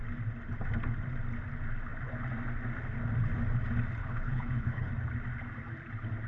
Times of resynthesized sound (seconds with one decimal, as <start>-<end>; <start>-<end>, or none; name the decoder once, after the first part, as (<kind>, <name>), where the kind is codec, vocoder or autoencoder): 4.0-4.9 (codec, HILCodec)